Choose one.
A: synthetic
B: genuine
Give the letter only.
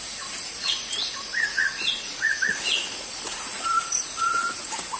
A